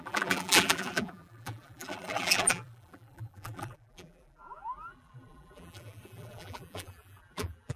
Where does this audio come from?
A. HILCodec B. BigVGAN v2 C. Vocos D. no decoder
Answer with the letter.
B